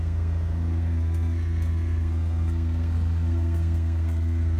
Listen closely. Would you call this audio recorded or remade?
remade